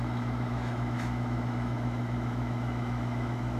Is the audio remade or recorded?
remade